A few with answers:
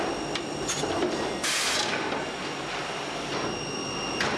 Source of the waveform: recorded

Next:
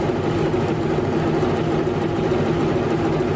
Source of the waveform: recorded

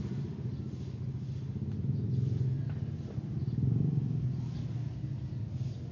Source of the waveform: recorded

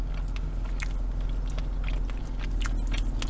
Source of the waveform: recorded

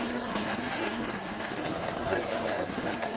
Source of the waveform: remade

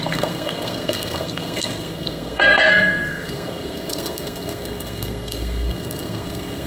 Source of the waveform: remade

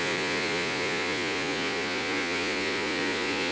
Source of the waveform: remade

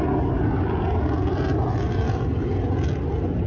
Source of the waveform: recorded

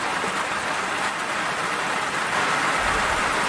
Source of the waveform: remade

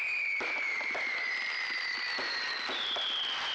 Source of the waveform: recorded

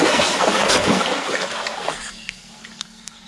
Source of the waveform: remade